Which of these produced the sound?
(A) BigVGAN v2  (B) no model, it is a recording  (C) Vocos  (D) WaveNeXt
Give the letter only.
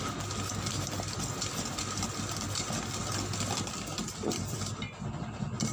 B